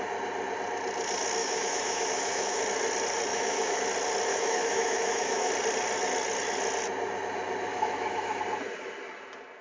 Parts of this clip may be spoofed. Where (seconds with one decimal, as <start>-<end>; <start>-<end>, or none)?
1.4-2.6; 3.3-3.8; 4.3-5.5; 7.7-8.4